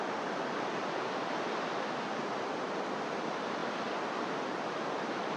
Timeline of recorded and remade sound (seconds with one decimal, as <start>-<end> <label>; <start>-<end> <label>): 0.0-5.4 recorded